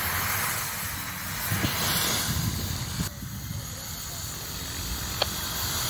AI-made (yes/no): no